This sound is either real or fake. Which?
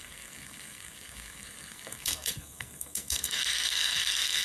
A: fake